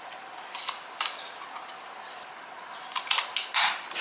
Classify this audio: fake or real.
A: real